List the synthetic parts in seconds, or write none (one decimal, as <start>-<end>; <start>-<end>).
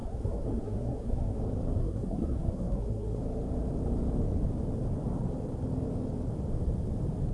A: 0.0-1.4; 1.8-3.2